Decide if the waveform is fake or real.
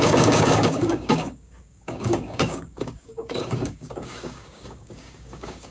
fake